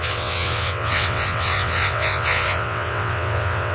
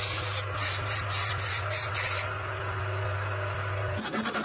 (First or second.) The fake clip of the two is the first